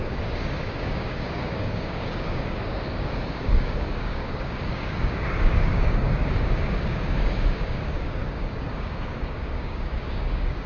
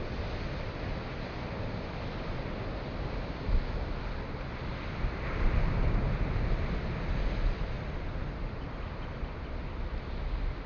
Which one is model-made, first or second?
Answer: first